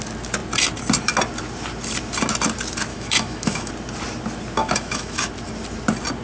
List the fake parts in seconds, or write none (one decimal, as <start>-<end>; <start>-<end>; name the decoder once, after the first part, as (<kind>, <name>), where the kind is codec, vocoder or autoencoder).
2.9-3.7 (autoencoder, DAC-VAE); 4.6-5.3